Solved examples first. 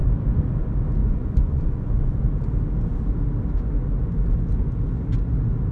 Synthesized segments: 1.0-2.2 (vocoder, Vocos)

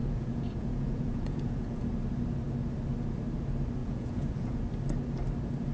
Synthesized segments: 0.0-1.8 (vocoder, Vocos); 3.8-4.6

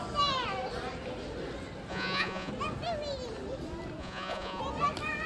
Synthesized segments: 1.9-2.5 (vocoder, Vocos); 4.0-4.6